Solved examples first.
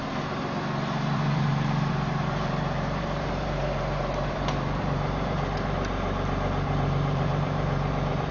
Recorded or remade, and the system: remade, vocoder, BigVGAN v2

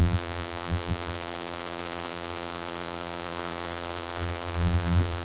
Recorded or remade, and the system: remade, vocoder, BigVGAN v2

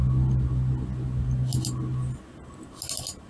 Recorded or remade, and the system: recorded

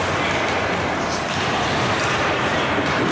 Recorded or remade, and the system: recorded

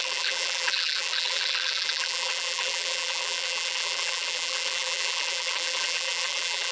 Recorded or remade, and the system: remade, vocoder, BigVGAN v2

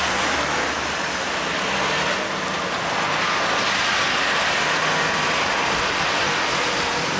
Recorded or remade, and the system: recorded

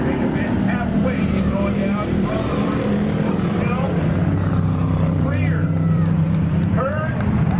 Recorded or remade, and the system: remade, vocoder, BigVGAN v2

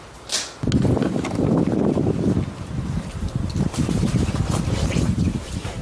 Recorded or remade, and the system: recorded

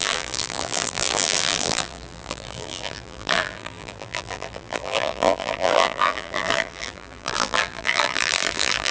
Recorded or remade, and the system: remade, vocoder, BigVGAN v2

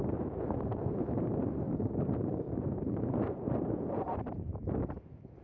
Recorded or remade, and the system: remade, vocoder, BigVGAN v2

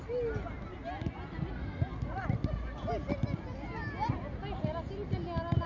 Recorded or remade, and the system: recorded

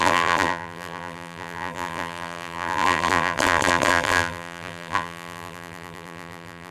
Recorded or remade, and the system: remade, vocoder, BigVGAN v2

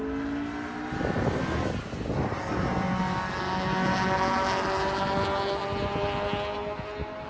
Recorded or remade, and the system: recorded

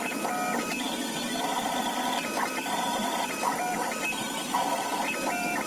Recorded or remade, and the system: remade, vocoder, BigVGAN v2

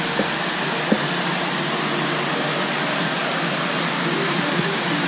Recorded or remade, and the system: recorded